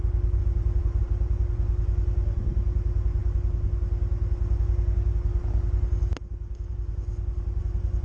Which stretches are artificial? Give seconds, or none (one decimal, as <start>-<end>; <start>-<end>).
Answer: 0.4-1.0